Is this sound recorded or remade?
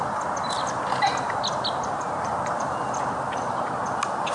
recorded